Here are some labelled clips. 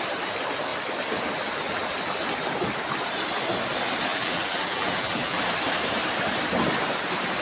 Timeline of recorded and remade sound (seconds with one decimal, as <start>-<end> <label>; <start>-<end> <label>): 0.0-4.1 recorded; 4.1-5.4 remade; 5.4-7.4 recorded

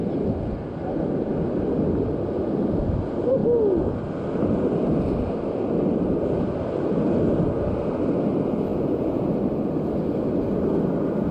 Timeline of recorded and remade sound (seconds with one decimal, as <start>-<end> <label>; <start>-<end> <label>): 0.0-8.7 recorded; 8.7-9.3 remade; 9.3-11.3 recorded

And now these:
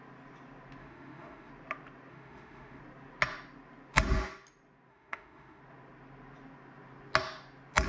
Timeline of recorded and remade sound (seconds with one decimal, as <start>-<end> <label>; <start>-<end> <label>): 0.0-0.8 recorded; 0.8-1.5 remade; 1.5-2.1 recorded; 2.1-2.8 remade; 2.8-4.9 recorded; 4.9-5.6 remade; 5.6-7.9 recorded

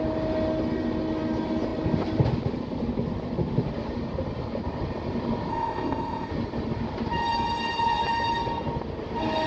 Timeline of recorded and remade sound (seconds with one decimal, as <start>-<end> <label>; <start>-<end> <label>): 0.0-5.5 recorded; 5.5-6.3 remade; 6.3-9.5 recorded